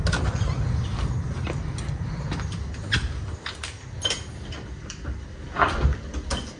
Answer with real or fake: real